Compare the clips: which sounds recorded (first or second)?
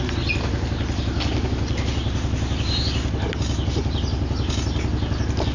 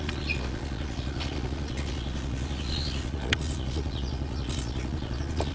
first